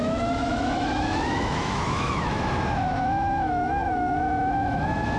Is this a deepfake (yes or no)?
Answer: yes